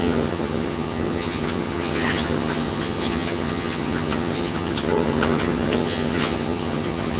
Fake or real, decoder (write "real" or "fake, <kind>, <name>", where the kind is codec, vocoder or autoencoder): fake, vocoder, HiFi-GAN